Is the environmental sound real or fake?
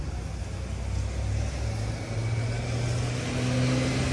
real